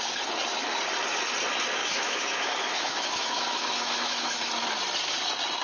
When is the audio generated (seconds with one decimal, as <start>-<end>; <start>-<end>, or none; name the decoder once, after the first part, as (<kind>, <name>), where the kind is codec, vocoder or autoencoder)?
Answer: 1.8-4.5 (autoencoder, DAC-VAE)